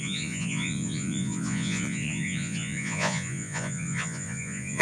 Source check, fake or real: fake